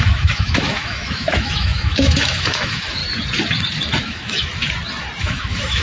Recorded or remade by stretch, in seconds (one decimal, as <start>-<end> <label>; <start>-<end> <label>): 0.0-3.0 remade; 3.0-4.0 recorded; 4.0-4.5 remade; 4.5-5.2 recorded; 5.2-5.8 remade